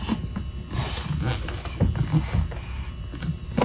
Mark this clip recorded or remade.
recorded